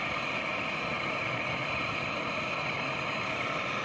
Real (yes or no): no